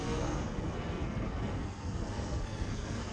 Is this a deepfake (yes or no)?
yes